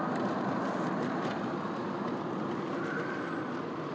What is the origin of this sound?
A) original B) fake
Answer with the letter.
B